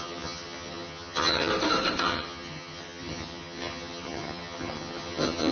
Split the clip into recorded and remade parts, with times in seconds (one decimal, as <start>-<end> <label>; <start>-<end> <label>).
0.0-1.5 remade; 1.5-2.0 recorded; 2.0-5.5 remade